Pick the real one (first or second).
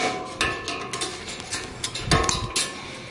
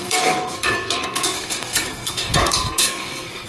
first